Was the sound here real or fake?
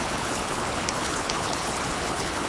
fake